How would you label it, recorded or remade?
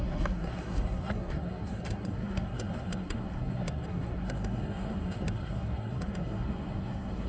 remade